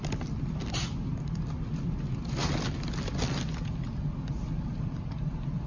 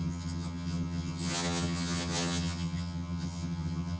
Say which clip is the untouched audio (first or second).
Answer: first